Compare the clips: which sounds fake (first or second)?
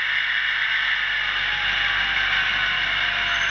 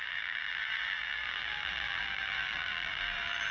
second